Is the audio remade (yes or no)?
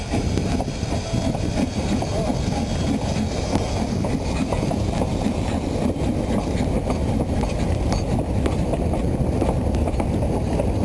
no